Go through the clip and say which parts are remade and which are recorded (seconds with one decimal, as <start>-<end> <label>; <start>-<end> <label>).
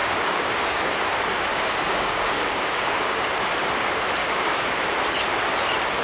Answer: 0.0-0.9 remade; 0.9-1.5 recorded; 1.5-3.3 remade; 3.3-4.2 recorded; 4.2-4.7 remade; 4.7-6.0 recorded